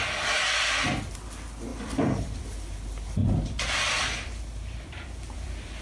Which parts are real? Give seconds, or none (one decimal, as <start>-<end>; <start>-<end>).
0.0-1.7; 2.4-3.2